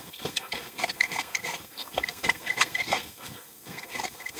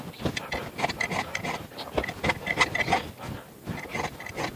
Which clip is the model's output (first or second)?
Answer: first